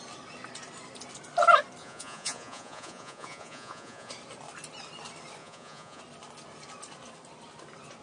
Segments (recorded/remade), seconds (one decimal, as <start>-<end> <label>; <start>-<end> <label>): 0.0-1.8 recorded; 1.8-4.1 remade; 4.1-5.4 recorded; 5.4-6.0 remade; 6.0-8.0 recorded